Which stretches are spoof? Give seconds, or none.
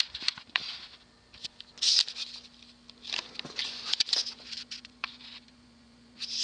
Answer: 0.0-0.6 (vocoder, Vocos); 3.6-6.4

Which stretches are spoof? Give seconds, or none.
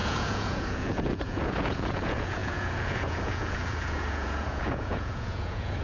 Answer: 0.0-5.8 (vocoder, Vocos)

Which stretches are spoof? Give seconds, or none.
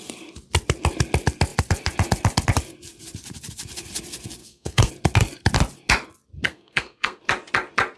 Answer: 4.4-4.9 (codec, SNAC); 6.5-7.2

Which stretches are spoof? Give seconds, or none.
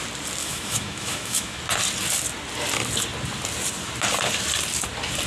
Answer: 0.4-1.6 (autoencoder, DAC-VAE)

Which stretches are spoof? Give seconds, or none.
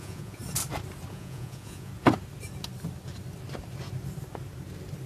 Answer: 0.0-0.4 (vocoder, Vocos); 1.1-1.9